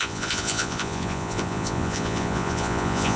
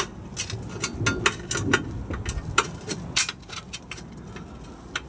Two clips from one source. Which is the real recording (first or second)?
second